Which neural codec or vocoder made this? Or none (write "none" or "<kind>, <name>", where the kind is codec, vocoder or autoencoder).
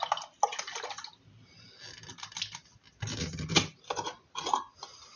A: none